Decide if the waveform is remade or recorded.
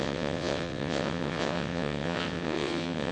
remade